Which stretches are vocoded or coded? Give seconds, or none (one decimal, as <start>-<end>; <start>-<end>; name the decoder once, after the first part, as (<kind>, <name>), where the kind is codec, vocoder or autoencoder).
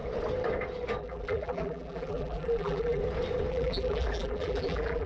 1.0-3.0 (vocoder, BigVGAN v2); 3.5-5.1